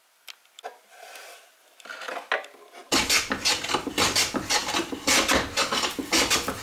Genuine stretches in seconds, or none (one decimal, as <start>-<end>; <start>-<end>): 0.0-6.6